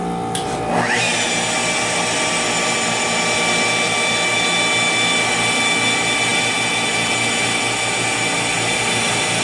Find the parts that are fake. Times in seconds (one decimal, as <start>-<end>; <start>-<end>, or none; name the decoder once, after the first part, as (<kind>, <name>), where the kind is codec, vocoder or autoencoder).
none